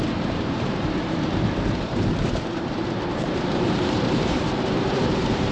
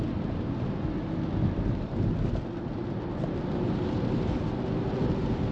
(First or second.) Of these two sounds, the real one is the second